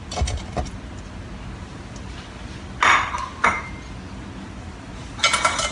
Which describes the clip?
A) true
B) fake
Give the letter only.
A